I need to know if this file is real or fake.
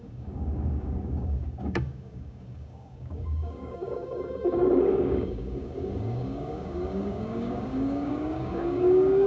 fake